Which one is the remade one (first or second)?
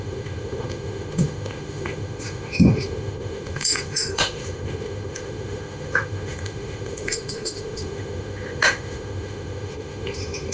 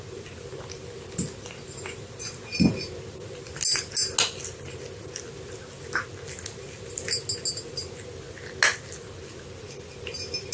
first